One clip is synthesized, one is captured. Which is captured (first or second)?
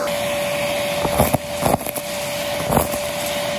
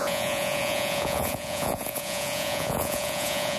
first